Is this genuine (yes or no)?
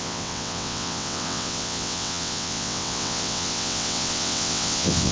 no